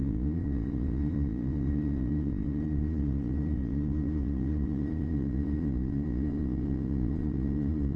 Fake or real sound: fake